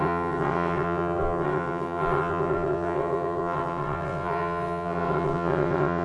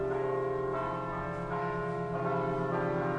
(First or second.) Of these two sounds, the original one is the second